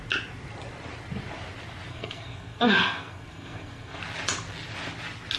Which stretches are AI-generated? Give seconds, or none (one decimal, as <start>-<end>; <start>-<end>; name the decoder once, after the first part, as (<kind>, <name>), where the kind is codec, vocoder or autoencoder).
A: 1.9-4.0 (codec, SNAC)